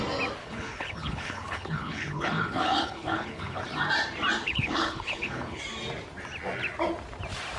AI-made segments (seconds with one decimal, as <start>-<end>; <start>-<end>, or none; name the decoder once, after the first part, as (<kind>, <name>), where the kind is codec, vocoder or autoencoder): 0.4-3.6 (codec, HILCodec); 4.4-5.6